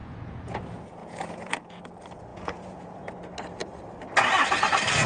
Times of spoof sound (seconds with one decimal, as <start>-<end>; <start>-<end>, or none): 0.0-0.6; 1.0-1.8; 2.3-3.1